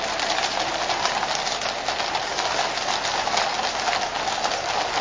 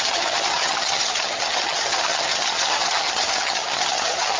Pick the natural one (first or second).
first